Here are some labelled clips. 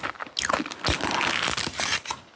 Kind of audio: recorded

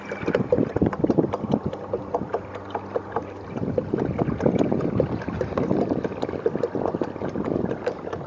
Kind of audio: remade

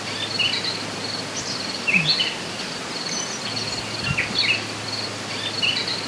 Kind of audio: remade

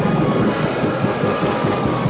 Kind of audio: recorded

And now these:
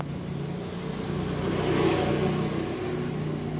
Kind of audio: recorded